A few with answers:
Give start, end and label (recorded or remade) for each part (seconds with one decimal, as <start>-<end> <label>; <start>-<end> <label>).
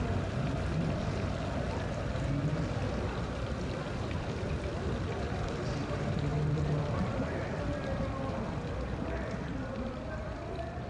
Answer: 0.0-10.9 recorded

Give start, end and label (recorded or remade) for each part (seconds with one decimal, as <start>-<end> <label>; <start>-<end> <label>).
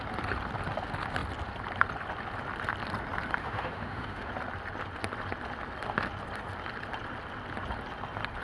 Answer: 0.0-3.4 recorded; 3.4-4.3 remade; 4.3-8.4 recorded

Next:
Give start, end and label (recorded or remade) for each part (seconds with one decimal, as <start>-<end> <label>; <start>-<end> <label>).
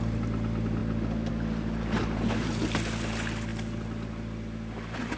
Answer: 0.0-5.2 recorded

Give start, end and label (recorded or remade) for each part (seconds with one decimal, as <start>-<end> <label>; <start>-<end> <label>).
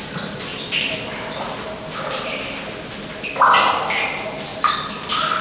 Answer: 0.0-5.4 recorded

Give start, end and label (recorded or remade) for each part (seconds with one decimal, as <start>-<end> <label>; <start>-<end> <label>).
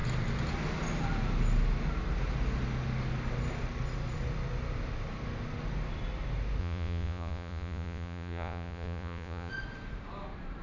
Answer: 0.0-6.6 recorded; 6.6-9.5 remade; 9.5-10.6 recorded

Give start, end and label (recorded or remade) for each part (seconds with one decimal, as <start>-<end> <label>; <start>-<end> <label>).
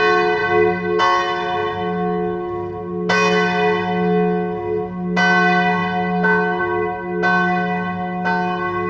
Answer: 0.0-8.9 recorded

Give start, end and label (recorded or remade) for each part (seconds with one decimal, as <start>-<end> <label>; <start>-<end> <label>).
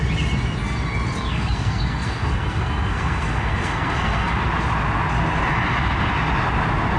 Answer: 0.0-1.3 recorded; 1.3-4.3 remade; 4.3-7.0 recorded